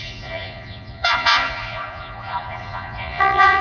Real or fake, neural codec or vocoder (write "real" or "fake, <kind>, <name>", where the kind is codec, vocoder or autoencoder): fake, vocoder, Vocos